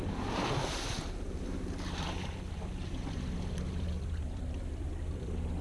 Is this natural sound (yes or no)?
no